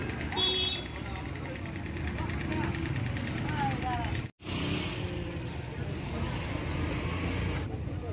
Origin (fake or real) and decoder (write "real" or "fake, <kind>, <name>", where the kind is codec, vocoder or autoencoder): real